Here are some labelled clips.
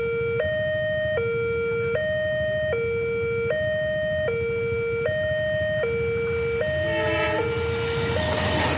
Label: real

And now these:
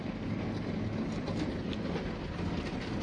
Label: real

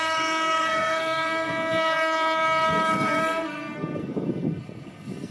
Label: fake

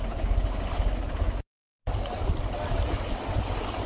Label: real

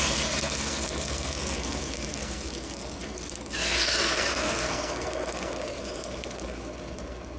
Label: fake